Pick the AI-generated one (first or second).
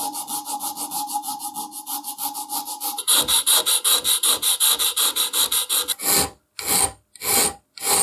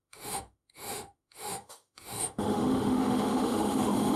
second